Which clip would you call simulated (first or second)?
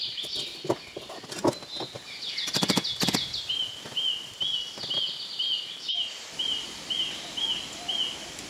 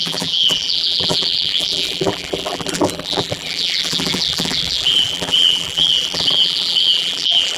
second